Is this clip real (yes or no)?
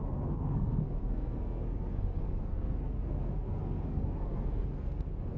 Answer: no